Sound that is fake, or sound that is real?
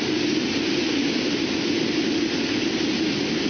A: real